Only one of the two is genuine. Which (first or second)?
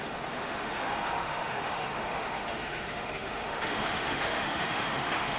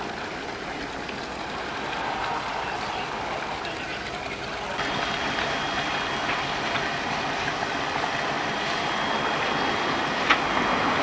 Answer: second